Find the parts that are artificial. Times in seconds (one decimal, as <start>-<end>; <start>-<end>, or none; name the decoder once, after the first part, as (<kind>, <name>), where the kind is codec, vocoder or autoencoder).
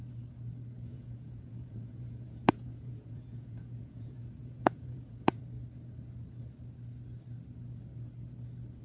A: 0.9-5.4 (vocoder, Vocos)